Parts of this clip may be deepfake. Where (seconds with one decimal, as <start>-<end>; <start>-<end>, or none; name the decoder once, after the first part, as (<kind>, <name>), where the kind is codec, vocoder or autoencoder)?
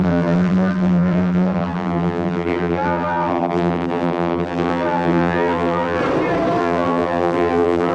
0.0-6.0 (vocoder, BigVGAN v2); 6.6-7.9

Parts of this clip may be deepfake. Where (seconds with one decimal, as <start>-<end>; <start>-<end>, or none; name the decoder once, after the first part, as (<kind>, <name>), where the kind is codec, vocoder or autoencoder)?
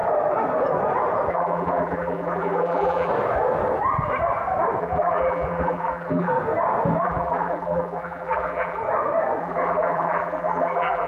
1.3-3.1 (vocoder, BigVGAN v2); 4.8-6.3; 7.0-8.8; 9.4-11.1